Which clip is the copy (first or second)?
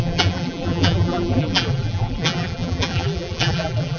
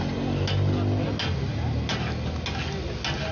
first